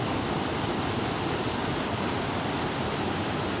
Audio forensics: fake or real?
real